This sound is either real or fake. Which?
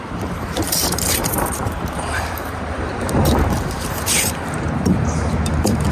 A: fake